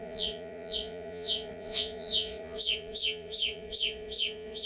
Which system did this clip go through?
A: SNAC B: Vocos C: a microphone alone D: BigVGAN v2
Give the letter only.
B